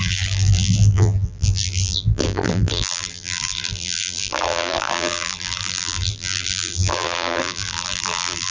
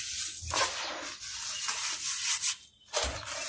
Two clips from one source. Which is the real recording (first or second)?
second